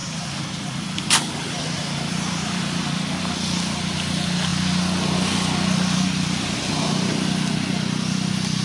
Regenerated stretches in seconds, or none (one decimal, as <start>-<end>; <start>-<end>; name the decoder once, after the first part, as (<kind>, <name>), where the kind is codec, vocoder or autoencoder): 0.0-2.6 (vocoder, BigVGAN v2)

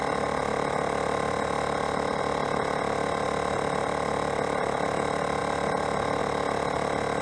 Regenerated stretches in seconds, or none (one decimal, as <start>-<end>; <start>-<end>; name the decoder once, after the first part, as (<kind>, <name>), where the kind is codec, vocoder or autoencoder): none

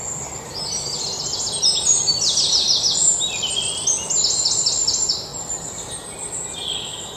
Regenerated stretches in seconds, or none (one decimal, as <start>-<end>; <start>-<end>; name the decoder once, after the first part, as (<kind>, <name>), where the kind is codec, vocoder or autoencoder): 5.3-6.3 (vocoder, BigVGAN v2)

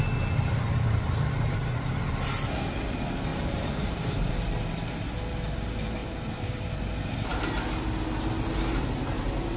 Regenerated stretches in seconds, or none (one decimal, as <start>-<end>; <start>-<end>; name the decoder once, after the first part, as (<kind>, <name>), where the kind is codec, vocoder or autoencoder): 3.3-4.3 (vocoder, BigVGAN v2); 6.0-6.7

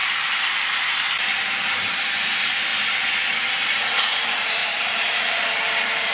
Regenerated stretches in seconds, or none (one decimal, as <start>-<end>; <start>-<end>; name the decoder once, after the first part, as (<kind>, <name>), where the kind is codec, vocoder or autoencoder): 0.0-2.7 (vocoder, BigVGAN v2); 4.0-6.1

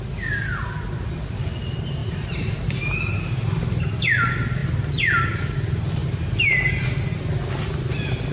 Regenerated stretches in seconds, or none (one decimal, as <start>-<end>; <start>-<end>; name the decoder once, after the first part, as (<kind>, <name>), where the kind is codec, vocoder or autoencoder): 2.0-3.9 (vocoder, BigVGAN v2); 6.0-7.2

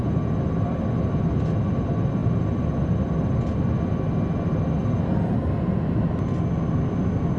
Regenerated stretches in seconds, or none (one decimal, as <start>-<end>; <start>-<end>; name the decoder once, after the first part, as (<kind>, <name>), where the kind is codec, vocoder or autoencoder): none

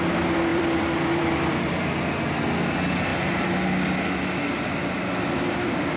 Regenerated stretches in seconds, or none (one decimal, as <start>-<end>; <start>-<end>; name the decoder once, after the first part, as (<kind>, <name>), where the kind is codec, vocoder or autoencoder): 0.5-2.0 (vocoder, BigVGAN v2)